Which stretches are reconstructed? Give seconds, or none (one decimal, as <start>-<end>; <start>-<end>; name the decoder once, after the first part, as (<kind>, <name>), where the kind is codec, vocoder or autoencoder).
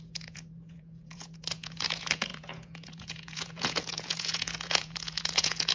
0.0-5.7 (vocoder, Vocos)